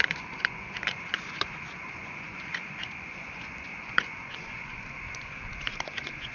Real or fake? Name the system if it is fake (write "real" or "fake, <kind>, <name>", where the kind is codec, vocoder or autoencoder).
fake, vocoder, Vocos